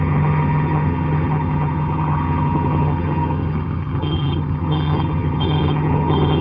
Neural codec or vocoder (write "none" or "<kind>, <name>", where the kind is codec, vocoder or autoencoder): vocoder, HiFi-GAN